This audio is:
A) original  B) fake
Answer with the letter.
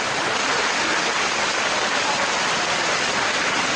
B